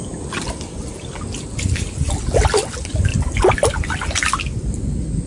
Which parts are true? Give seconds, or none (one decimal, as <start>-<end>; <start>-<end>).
0.0-5.3